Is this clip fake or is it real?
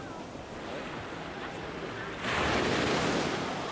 real